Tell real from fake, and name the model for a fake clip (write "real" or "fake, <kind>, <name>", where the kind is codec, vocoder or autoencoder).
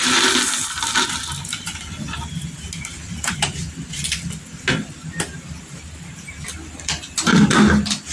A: real